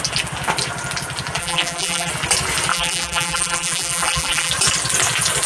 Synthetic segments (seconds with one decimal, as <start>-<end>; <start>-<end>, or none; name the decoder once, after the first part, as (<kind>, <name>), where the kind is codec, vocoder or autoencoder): 1.4-2.1 (vocoder, BigVGAN v2); 2.7-4.5